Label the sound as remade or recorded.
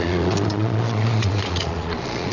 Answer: remade